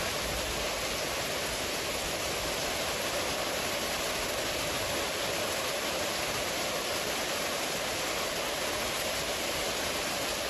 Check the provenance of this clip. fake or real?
real